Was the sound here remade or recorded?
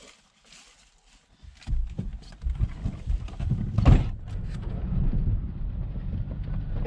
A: recorded